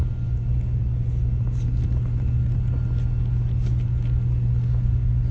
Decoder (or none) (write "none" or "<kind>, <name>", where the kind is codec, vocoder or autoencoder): none